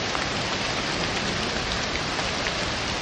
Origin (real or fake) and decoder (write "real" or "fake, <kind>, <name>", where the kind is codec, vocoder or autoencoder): real